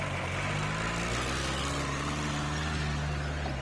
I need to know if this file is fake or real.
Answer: real